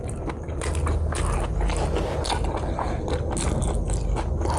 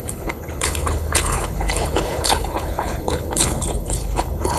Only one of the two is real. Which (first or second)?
first